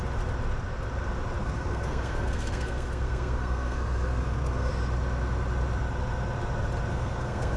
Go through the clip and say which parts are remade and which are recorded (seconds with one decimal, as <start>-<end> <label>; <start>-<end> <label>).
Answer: 0.0-1.4 recorded; 1.4-4.7 remade; 4.7-6.9 recorded; 6.9-7.6 remade